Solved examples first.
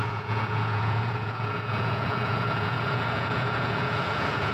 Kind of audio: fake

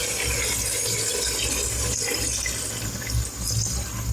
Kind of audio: real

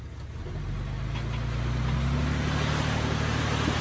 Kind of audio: real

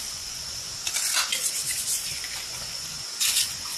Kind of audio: fake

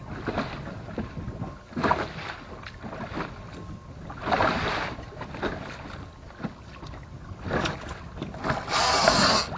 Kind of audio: real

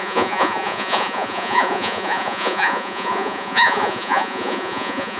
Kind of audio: fake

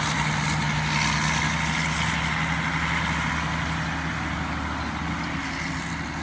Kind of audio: real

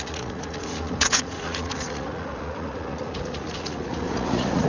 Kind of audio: fake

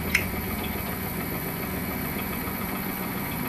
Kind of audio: fake